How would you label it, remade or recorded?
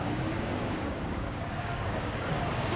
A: remade